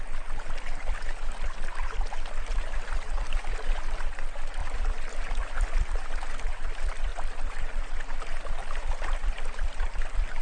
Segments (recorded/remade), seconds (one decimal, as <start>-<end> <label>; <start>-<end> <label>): 0.0-2.5 recorded; 2.5-4.0 remade; 4.0-4.6 recorded; 4.6-6.4 remade; 6.4-8.6 recorded; 8.6-9.3 remade; 9.3-10.4 recorded